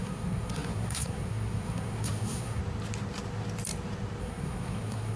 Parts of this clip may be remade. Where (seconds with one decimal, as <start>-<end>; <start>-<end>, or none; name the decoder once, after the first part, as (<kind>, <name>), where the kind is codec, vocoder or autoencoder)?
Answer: 0.0-2.6 (codec, SNAC); 4.2-5.2